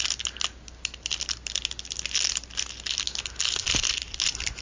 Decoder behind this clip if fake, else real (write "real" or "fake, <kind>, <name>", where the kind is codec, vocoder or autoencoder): real